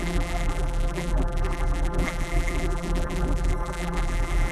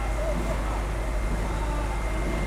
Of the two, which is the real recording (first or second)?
second